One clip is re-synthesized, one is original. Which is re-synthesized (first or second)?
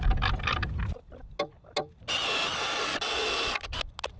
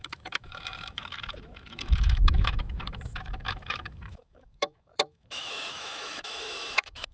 second